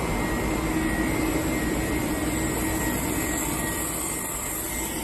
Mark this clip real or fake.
real